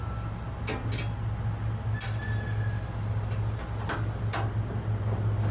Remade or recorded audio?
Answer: recorded